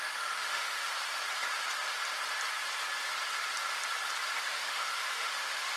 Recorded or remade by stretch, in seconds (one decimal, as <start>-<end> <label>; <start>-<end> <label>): 0.0-0.9 remade; 0.9-4.4 recorded; 4.4-5.8 remade